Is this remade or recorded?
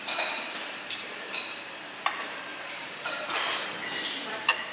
remade